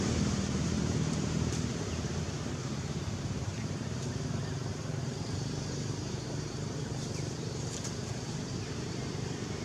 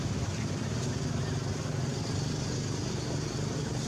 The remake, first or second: first